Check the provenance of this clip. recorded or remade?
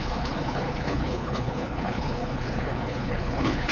remade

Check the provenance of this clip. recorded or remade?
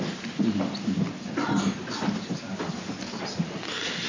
recorded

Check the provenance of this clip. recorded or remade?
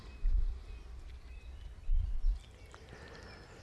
remade